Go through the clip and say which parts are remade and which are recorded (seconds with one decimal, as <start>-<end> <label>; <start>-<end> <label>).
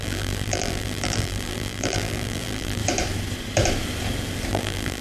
0.0-2.8 remade; 2.8-4.5 recorded; 4.5-5.0 remade